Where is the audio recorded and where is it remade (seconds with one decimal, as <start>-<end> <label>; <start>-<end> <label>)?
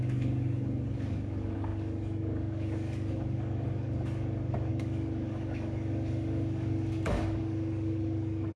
0.0-8.6 remade